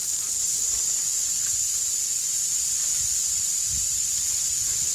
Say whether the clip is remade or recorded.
recorded